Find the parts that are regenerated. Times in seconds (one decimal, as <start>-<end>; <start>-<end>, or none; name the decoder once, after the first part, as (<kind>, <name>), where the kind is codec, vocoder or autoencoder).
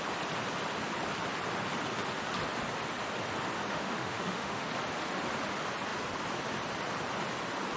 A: 3.7-4.7 (autoencoder, DAC-VAE)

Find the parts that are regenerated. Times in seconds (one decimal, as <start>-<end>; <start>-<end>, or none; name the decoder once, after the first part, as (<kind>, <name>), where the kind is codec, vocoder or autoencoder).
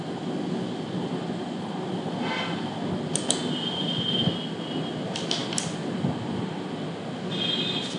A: none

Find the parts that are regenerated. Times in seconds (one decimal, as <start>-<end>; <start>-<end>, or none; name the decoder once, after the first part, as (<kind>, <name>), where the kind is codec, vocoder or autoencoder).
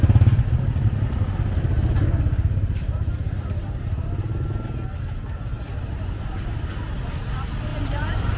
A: 7.7-8.4 (vocoder, BigVGAN v2)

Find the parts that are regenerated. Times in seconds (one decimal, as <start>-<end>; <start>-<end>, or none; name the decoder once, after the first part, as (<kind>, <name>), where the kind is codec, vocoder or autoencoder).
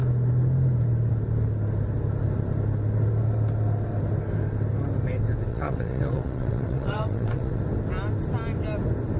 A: 5.5-7.6 (vocoder, WaveNeXt)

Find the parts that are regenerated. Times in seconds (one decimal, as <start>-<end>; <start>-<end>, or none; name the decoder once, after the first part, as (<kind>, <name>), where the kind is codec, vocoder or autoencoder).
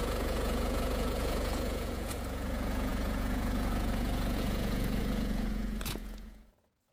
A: 0.0-6.9 (vocoder, Vocos)